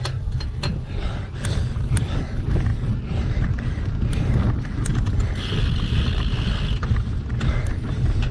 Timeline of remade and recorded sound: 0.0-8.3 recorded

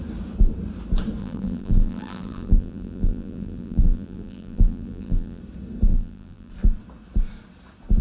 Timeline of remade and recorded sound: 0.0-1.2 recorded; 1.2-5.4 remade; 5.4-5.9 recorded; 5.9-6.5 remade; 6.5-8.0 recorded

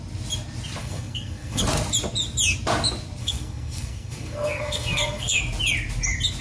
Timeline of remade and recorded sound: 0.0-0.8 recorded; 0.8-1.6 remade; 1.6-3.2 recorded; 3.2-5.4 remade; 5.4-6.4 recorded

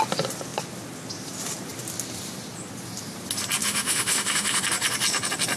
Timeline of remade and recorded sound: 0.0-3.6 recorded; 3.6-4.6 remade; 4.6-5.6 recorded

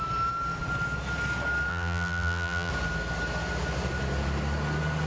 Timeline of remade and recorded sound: 0.0-1.7 recorded; 1.7-2.7 remade; 2.7-5.1 recorded

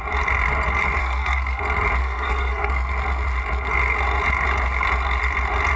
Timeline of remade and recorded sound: 0.0-1.0 recorded; 1.0-1.6 remade; 1.6-2.0 recorded; 2.0-2.7 remade; 2.7-5.8 recorded

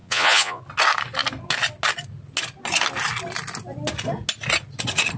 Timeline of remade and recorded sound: 0.0-0.6 remade; 0.6-5.2 recorded

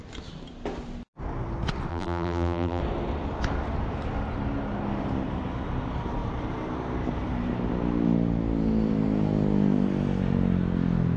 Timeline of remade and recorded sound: 0.0-1.9 recorded; 1.9-2.8 remade; 2.8-11.2 recorded